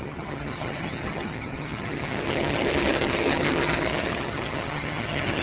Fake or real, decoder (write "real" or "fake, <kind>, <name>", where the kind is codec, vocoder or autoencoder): fake, vocoder, HiFi-GAN